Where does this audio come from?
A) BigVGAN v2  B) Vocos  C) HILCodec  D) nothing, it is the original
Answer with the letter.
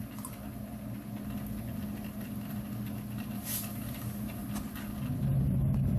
D